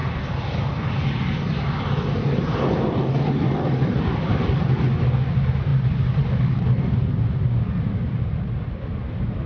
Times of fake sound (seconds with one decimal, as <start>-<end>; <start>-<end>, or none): 4.6-5.7; 8.2-9.5